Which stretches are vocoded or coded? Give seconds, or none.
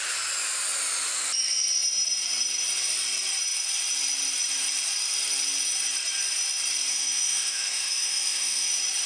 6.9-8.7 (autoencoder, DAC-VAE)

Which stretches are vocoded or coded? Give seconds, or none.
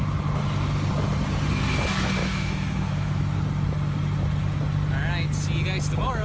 2.2-3.2 (autoencoder, DAC-VAE)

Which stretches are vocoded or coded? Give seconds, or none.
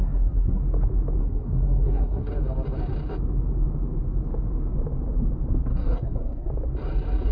0.0-0.6 (codec, SNAC); 1.2-2.3; 5.7-6.5